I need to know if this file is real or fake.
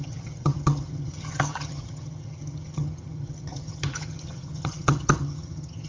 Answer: fake